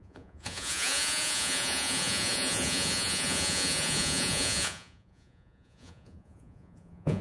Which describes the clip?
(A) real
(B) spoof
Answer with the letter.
B